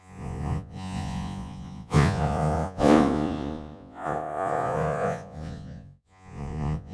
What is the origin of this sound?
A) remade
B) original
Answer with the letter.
A